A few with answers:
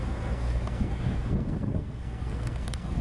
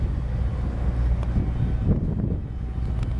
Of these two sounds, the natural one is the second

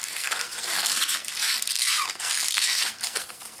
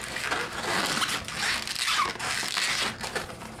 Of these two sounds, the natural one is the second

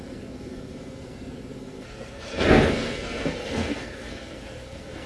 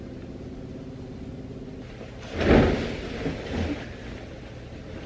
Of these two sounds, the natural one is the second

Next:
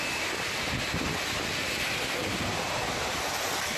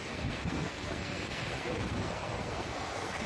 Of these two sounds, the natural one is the first